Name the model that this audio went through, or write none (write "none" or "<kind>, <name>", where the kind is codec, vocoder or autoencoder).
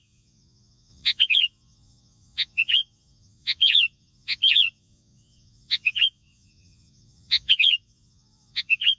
vocoder, Vocos